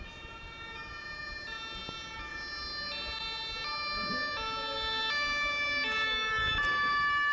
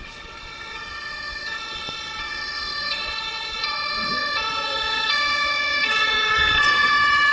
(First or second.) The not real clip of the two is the second